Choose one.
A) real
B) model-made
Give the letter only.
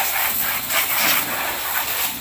A